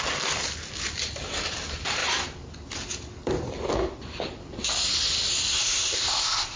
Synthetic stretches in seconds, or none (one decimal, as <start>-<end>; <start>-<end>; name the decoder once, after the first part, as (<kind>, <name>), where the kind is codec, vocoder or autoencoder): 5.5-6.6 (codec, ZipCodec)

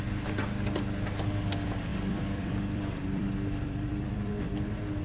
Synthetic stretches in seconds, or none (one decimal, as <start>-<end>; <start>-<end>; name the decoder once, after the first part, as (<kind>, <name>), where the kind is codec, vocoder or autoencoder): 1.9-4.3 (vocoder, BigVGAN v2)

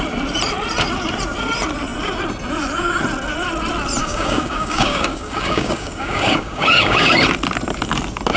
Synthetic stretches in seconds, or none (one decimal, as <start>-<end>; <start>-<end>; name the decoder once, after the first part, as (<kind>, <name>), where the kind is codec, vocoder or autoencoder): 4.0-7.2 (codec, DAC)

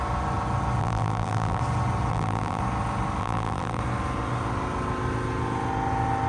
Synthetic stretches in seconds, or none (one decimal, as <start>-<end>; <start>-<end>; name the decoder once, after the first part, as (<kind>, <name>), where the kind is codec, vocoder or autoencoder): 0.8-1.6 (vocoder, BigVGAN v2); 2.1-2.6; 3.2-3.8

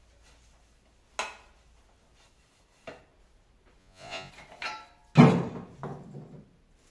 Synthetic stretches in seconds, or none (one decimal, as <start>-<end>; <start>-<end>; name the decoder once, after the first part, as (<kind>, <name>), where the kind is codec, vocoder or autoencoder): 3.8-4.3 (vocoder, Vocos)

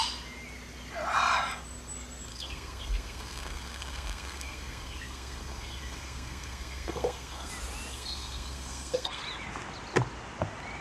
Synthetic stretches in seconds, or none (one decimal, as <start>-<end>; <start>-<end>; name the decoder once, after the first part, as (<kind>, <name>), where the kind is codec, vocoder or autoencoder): 2.3-7.5 (codec, SNAC); 7.9-9.2

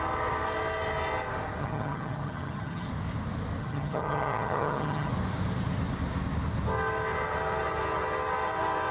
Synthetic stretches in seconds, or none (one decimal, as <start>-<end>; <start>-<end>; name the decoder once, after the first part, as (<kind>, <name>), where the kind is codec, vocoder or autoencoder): 1.6-2.9 (vocoder, HiFi-GAN); 3.6-5.1

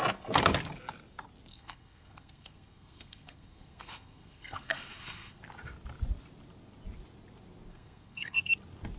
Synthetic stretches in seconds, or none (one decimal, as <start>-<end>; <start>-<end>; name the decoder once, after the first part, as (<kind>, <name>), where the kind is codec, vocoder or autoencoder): 1.5-5.4 (codec, SNAC); 7.7-8.5